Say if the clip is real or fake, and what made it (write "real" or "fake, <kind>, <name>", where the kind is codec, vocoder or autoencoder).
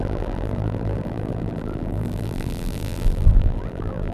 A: fake, vocoder, BigVGAN v2